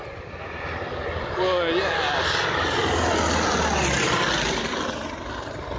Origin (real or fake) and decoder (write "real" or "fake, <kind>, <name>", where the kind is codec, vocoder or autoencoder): real